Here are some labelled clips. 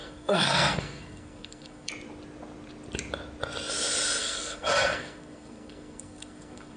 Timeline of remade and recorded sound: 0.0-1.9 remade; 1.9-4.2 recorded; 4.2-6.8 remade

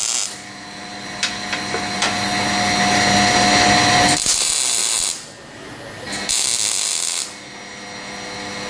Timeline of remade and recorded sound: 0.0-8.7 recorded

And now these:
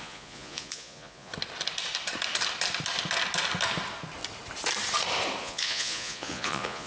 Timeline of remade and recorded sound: 0.0-1.3 remade; 1.3-5.4 recorded; 5.4-6.9 remade